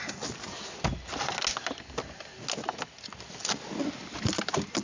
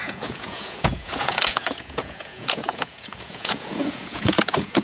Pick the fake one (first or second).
second